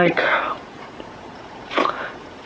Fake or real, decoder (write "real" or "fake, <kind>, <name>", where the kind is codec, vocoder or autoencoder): fake, vocoder, Vocos